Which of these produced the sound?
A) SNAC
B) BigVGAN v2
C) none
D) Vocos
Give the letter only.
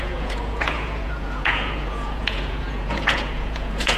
D